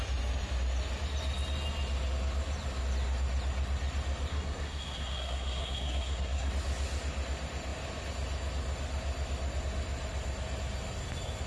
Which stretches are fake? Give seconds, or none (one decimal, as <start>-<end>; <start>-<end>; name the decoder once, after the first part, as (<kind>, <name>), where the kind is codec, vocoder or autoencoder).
4.3-6.5 (codec, SNAC)